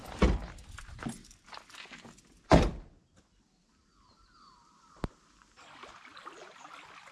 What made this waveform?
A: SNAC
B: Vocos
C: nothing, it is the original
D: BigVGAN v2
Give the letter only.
C